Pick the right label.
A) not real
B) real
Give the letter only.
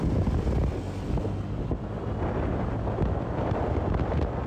B